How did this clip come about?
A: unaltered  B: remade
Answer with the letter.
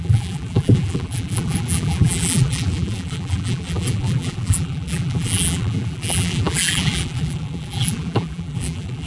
B